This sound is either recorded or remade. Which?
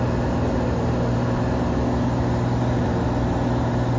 recorded